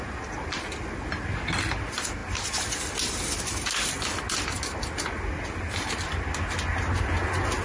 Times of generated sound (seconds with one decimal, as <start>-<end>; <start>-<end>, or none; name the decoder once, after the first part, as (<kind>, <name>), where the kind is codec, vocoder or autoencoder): none

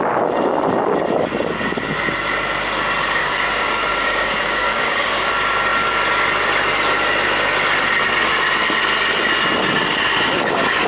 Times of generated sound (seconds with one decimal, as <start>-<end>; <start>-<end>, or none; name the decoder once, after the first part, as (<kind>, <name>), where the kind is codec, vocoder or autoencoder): 3.2-5.3 (codec, DAC)

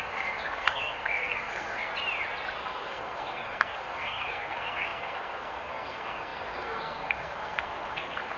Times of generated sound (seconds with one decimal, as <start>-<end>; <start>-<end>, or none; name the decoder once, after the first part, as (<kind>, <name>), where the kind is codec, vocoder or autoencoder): 0.0-1.9 (codec, SNAC); 2.6-8.4

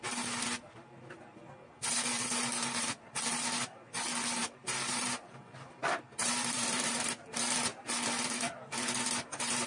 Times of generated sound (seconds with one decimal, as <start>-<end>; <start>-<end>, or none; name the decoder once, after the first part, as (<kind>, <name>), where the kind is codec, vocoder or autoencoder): 4.4-7.0 (vocoder, BigVGAN v2)

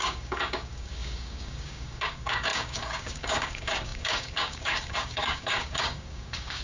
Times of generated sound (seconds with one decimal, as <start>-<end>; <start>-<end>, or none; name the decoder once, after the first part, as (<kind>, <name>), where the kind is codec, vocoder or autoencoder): 0.0-6.6 (codec, DAC)

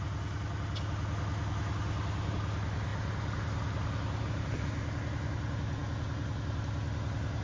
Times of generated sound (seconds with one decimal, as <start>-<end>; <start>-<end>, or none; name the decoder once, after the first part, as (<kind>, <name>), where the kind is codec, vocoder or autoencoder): none

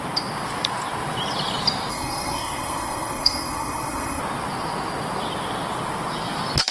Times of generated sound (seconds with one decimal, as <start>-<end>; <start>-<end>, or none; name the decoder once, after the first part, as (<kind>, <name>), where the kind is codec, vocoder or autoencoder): 1.9-4.2 (codec, SNAC)

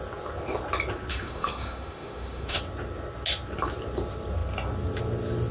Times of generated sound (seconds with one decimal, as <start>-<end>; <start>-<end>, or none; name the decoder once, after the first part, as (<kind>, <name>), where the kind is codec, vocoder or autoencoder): 1.1-2.6 (autoencoder, DAC-VAE)